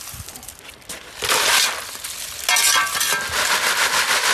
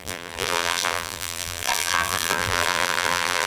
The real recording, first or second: first